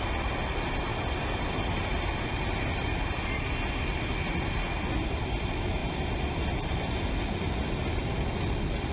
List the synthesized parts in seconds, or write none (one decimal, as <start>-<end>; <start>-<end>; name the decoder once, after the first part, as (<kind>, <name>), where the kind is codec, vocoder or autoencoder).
none